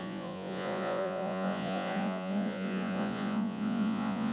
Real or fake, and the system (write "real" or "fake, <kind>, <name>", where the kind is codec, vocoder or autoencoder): fake, vocoder, Vocos